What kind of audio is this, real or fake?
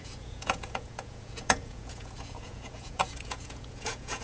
fake